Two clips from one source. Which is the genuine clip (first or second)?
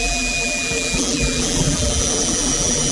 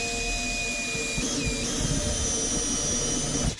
second